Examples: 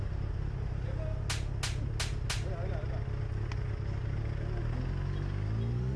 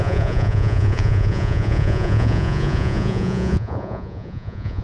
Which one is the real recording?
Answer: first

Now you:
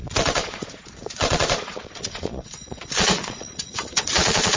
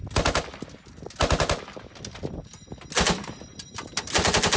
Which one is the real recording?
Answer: second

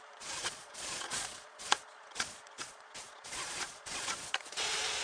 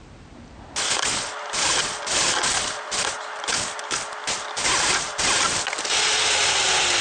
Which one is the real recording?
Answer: second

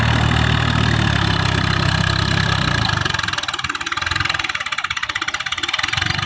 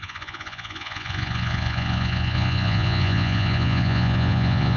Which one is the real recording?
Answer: first